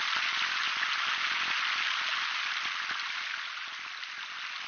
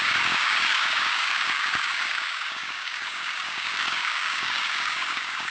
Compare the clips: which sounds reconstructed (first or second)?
second